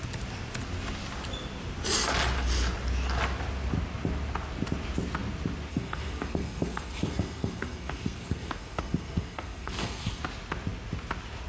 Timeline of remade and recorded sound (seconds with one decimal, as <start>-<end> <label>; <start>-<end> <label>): 0.0-5.7 recorded; 5.7-10.2 remade; 10.2-11.5 recorded